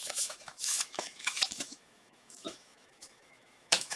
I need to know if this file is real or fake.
fake